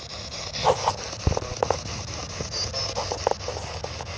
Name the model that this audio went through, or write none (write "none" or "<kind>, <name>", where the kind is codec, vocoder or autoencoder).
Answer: none